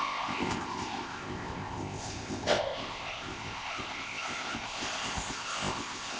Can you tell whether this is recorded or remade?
remade